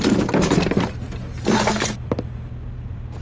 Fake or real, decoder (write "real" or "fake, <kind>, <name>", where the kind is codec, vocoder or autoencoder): real